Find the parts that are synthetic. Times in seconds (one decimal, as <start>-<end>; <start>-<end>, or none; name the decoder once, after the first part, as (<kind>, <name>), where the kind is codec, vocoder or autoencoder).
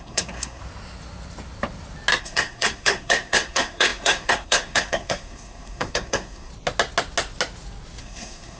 0.0-0.6 (codec, SNAC); 2.2-6.5; 8.0-8.6